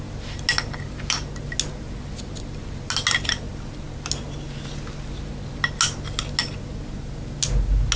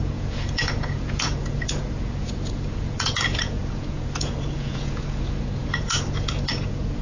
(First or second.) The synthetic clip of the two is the second